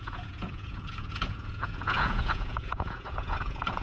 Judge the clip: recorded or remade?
remade